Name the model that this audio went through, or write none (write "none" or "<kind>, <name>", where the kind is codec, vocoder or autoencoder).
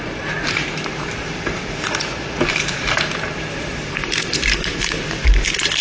vocoder, BigVGAN v2